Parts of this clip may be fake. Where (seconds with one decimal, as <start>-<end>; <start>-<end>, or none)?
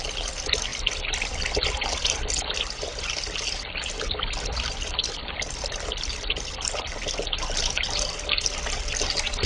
0.7-5.7